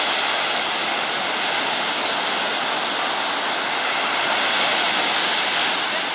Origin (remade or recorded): recorded